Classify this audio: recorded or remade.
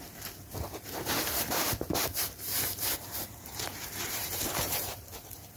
remade